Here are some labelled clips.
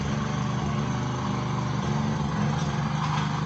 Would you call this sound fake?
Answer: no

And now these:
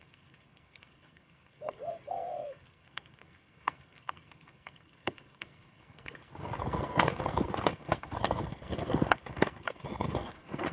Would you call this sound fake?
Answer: yes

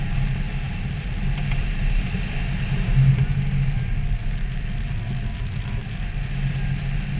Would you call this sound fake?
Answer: no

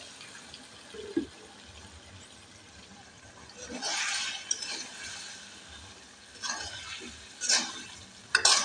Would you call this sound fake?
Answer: no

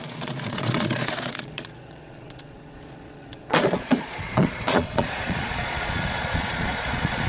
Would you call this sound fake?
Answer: yes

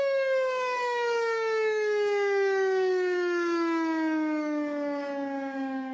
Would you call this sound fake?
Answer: yes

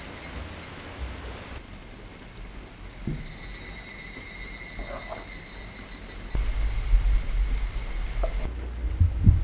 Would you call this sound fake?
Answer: no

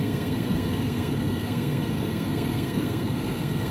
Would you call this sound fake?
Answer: yes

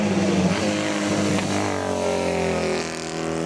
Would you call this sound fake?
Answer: no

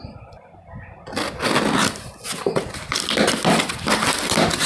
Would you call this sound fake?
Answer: no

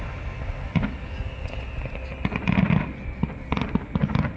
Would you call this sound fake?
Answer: no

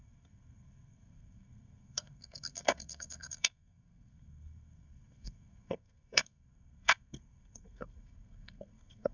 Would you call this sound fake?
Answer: yes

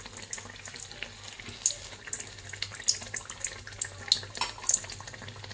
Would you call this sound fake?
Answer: no